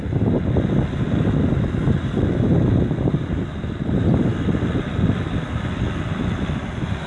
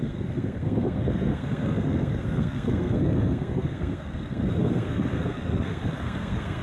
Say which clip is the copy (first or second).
second